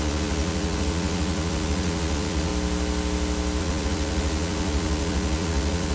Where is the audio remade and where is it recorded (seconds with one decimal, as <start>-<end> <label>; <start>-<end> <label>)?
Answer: 0.0-2.5 remade; 2.5-3.6 recorded; 3.6-5.9 remade

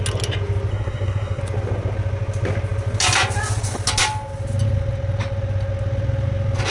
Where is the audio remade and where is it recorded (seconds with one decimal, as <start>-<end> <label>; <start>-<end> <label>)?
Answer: 0.0-0.7 recorded; 0.7-1.4 remade; 1.4-6.7 recorded

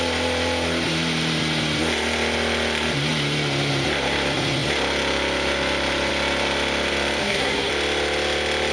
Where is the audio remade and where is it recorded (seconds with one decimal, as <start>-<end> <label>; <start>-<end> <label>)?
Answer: 0.0-7.2 recorded; 7.2-7.7 remade; 7.7-8.7 recorded

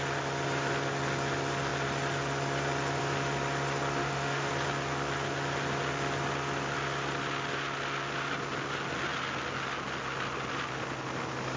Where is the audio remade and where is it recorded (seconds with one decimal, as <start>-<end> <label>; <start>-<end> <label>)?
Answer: 0.0-4.0 recorded; 4.0-4.5 remade; 4.5-11.6 recorded

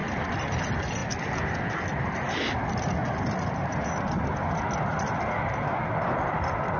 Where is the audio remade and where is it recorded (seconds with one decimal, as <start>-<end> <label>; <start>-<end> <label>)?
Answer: 0.0-0.6 remade; 0.6-6.8 recorded

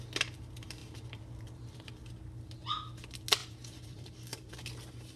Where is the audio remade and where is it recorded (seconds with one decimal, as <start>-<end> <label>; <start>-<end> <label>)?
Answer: 0.0-0.8 recorded; 0.8-2.0 remade; 2.0-3.4 recorded; 3.4-4.5 remade; 4.5-5.2 recorded

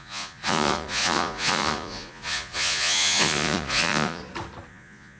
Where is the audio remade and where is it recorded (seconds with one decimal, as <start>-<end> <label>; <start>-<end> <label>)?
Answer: 0.0-4.2 remade; 4.2-4.7 recorded; 4.7-5.2 remade